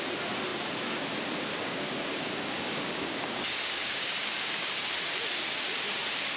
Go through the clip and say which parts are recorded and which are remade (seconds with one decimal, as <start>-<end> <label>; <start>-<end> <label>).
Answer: 0.0-1.5 recorded; 1.5-4.9 remade; 4.9-6.4 recorded